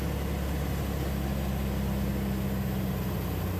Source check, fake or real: real